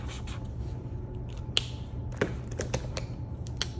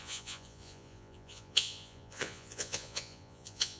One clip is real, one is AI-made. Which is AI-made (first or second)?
second